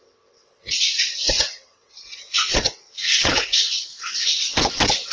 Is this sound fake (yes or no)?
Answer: yes